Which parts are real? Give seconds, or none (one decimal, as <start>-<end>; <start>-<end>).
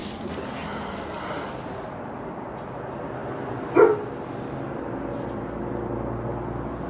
0.0-6.9